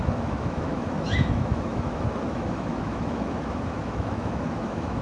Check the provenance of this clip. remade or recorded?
remade